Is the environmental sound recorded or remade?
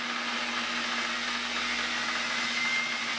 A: recorded